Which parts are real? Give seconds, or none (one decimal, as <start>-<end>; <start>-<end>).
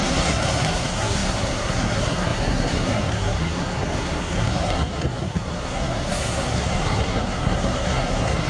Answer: none